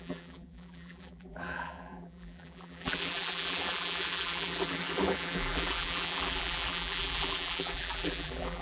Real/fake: fake